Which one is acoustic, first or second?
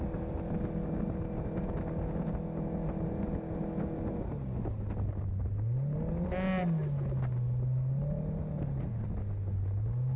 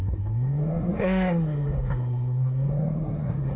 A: first